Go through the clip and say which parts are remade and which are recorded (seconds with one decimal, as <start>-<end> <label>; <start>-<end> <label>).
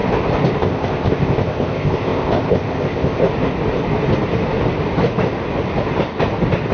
0.0-0.6 recorded; 0.6-3.2 remade; 3.2-6.7 recorded